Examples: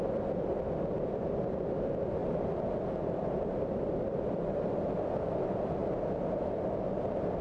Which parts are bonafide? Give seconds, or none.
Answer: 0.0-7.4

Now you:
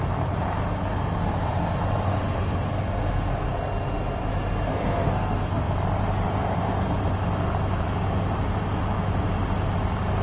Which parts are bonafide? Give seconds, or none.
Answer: 0.0-4.7; 5.7-10.2

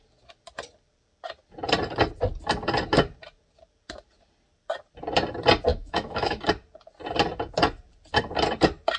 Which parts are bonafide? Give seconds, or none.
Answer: 0.0-5.7; 6.4-9.0

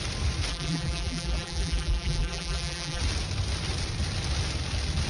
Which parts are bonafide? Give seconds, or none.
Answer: 0.0-0.5; 3.0-5.1